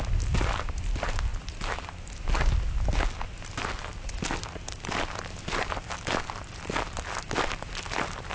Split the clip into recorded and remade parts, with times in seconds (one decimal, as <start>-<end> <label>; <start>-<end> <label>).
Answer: 0.0-8.3 recorded